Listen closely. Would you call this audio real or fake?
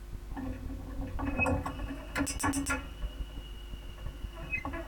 real